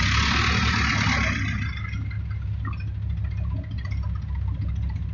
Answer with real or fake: real